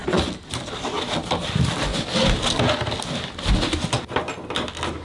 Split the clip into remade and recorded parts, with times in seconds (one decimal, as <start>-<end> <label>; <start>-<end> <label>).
0.0-5.0 recorded